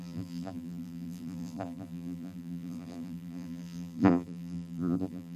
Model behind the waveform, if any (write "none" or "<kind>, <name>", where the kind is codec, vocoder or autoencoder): vocoder, BigVGAN v2